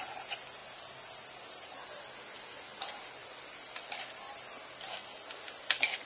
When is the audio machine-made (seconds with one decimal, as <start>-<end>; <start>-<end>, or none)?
3.2-4.4